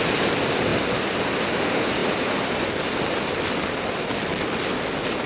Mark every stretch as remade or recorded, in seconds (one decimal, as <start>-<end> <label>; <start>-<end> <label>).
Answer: 0.0-5.3 recorded